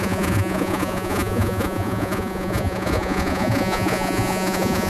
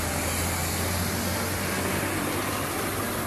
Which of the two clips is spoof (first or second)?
first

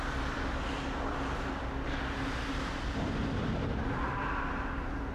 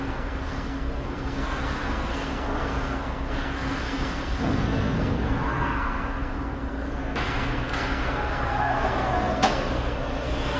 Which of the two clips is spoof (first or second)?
second